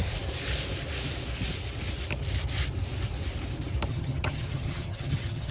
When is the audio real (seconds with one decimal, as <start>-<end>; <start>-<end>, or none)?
0.0-3.9